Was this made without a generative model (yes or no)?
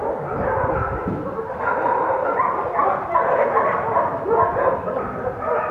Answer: yes